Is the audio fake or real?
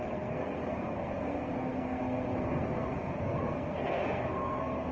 fake